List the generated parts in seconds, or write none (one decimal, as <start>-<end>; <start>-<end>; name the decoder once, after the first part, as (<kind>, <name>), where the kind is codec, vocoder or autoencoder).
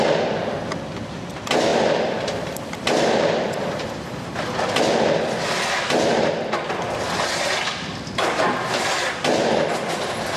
1.7-4.8 (vocoder, BigVGAN v2)